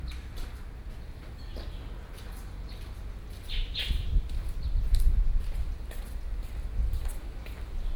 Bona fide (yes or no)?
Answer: yes